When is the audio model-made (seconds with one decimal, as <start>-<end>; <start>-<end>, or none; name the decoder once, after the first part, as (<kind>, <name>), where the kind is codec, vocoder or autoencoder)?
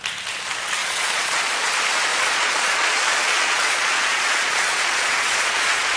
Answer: 0.8-1.7 (vocoder, Vocos); 2.1-6.0